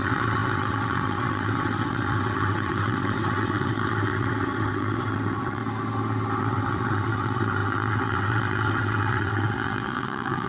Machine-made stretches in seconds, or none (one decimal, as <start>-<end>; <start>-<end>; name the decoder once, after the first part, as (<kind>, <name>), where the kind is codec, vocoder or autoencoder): 0.0-5.6 (vocoder, WaveNeXt); 6.4-10.5